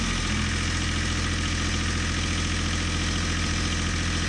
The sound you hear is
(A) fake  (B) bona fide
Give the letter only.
B